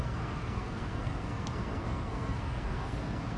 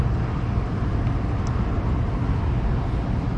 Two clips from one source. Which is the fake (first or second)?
first